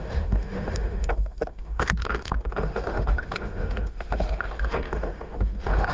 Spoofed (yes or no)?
yes